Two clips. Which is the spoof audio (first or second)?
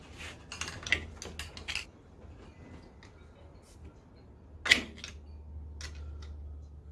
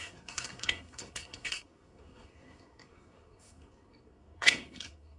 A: second